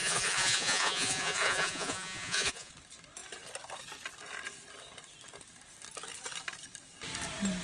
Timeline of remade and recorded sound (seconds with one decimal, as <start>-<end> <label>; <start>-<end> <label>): 0.0-2.7 remade; 2.7-7.6 recorded